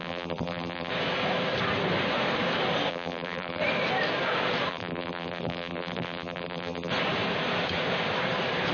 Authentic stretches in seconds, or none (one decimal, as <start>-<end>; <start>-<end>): 0.9-2.9; 3.6-4.7; 6.9-8.7